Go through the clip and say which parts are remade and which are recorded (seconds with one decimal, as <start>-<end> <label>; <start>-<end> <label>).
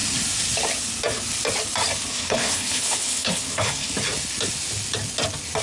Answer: 0.0-2.1 recorded; 2.1-3.9 remade; 3.9-5.6 recorded